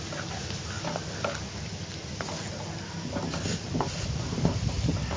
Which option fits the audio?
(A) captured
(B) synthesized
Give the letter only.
A